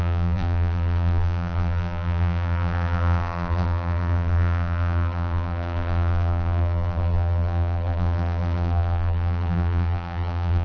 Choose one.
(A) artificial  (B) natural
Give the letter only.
A